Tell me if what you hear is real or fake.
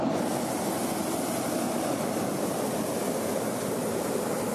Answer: real